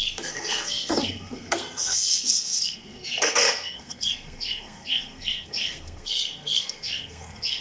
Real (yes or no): no